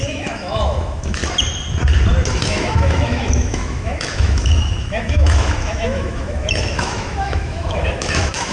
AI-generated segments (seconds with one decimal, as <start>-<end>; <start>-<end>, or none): 0.0-1.2; 2.3-8.5